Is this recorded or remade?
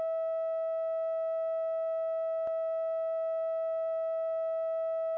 recorded